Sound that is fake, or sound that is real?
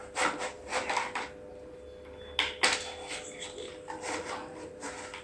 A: real